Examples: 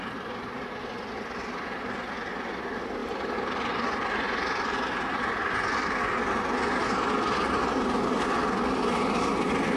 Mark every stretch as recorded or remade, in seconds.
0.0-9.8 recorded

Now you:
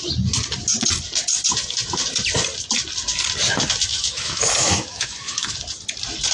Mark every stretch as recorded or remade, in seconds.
0.0-3.9 recorded; 3.9-5.6 remade; 5.6-6.3 recorded

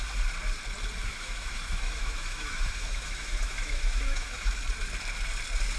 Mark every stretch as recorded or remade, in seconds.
0.0-1.0 recorded; 1.0-4.5 remade; 4.5-5.8 recorded

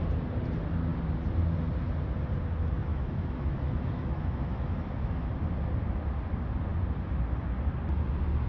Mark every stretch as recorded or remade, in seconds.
0.0-2.9 recorded; 2.9-5.3 remade; 5.3-8.5 recorded

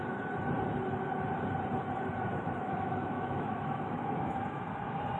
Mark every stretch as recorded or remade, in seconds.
0.0-2.3 recorded; 2.3-4.6 remade; 4.6-5.2 recorded

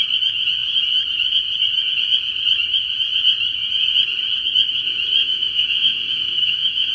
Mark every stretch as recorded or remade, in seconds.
0.0-5.2 recorded; 5.2-6.9 remade

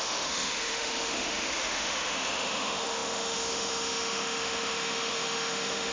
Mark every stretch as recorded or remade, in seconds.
0.0-5.9 remade